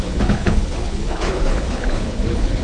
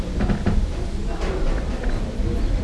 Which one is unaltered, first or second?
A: second